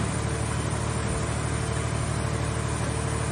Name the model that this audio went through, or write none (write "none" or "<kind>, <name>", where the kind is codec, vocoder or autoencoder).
none